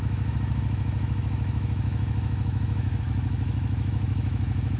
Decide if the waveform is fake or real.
fake